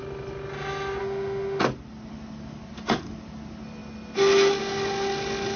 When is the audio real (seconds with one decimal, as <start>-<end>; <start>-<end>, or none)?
0.0-1.0; 1.6-5.6